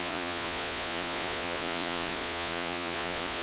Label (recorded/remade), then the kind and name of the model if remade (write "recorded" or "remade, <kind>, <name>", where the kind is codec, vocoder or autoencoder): remade, vocoder, Vocos